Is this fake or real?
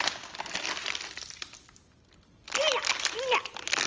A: real